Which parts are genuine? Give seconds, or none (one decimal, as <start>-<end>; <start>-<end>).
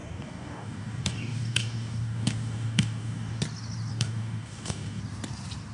3.4-3.9; 5.0-5.7